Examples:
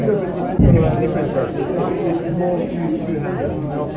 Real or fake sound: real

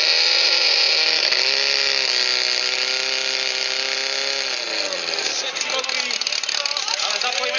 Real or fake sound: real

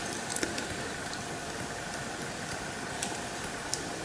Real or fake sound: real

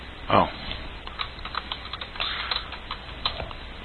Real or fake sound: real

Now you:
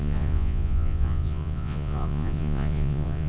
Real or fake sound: fake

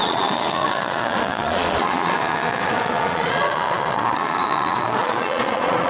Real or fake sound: fake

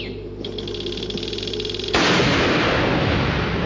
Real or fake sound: real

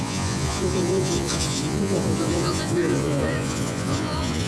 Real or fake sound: fake